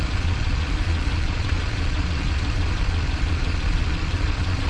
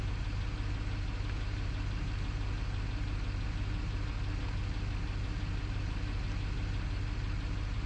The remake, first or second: first